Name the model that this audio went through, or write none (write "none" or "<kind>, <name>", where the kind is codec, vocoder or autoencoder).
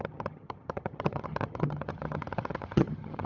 vocoder, HiFi-GAN